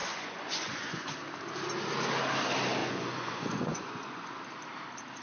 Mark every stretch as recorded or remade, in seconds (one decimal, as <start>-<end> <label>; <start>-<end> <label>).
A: 0.0-1.1 remade; 1.1-2.8 recorded; 2.8-4.3 remade; 4.3-5.2 recorded